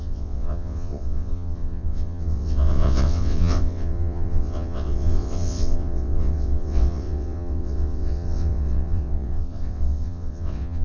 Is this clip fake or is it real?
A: fake